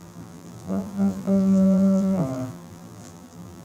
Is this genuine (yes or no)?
no